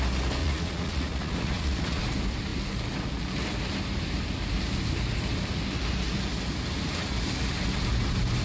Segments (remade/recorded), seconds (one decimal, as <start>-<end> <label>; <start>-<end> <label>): 0.0-0.4 recorded; 0.4-2.0 remade; 2.0-8.4 recorded